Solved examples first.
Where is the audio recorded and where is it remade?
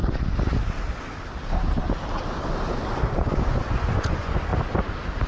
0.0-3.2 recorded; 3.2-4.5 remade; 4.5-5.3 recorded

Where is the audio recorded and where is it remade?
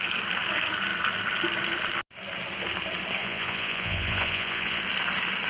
0.0-3.2 recorded; 3.2-4.8 remade; 4.8-5.5 recorded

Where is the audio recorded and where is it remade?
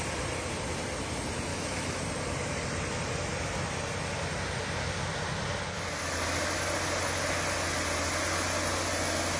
0.0-1.5 recorded; 1.5-2.0 remade; 2.0-9.4 recorded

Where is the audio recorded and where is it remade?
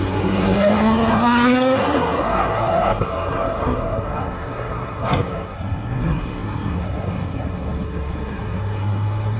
0.0-9.4 remade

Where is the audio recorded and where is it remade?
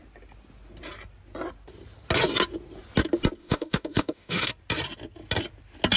0.0-3.4 recorded; 3.4-4.5 remade; 4.5-6.0 recorded